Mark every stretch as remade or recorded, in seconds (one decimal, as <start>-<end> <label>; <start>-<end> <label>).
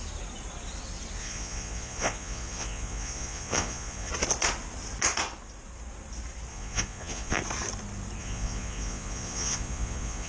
0.0-1.2 recorded; 1.2-4.1 remade; 4.1-6.5 recorded; 6.5-7.4 remade; 7.4-8.2 recorded; 8.2-10.3 remade